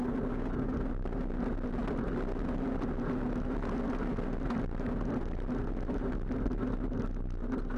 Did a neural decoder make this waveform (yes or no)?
no